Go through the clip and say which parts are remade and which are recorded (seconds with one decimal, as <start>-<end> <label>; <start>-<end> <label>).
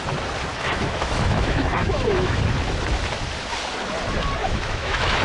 0.0-0.5 recorded; 0.5-2.4 remade; 2.4-4.4 recorded; 4.4-5.2 remade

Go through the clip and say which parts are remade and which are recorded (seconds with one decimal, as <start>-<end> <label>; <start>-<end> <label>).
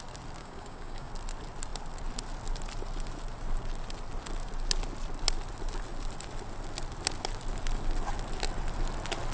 0.0-0.4 recorded; 0.4-1.1 remade; 1.1-9.3 recorded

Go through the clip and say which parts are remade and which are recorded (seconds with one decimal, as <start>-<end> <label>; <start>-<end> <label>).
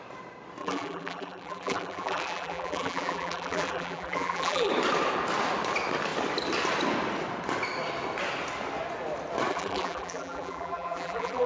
0.0-0.6 recorded; 0.6-4.7 remade; 4.7-9.5 recorded; 9.5-11.5 remade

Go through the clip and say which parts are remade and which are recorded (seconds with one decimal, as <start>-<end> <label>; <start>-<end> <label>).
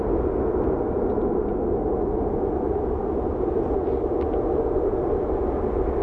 0.0-6.0 recorded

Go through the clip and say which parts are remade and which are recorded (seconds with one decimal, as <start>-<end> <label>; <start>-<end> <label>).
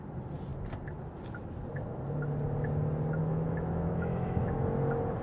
0.0-3.2 recorded; 3.2-4.5 remade; 4.5-5.2 recorded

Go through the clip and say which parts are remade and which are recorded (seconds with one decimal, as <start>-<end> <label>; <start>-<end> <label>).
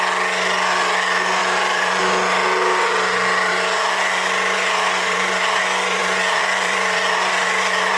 0.0-1.4 recorded; 1.4-2.0 remade; 2.0-3.5 recorded; 3.5-5.6 remade; 5.6-6.0 recorded; 6.0-8.0 remade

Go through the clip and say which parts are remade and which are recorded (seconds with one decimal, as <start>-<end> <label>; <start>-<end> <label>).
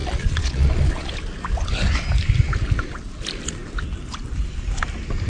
0.0-1.1 remade; 1.1-5.3 recorded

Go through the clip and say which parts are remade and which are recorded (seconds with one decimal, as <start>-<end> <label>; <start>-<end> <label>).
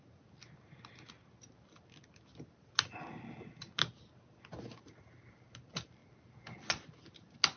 0.0-7.6 recorded